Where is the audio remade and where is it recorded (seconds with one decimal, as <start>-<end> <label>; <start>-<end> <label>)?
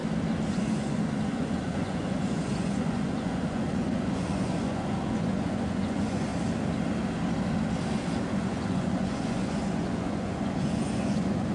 0.0-0.5 recorded; 0.5-6.3 remade; 6.3-8.3 recorded; 8.3-11.5 remade